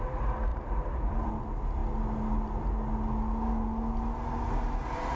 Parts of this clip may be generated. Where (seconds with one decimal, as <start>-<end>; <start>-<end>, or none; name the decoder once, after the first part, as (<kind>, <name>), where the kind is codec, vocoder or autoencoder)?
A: 0.5-1.3 (vocoder, BigVGAN v2)